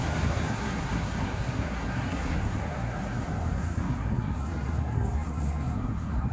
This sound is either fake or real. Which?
fake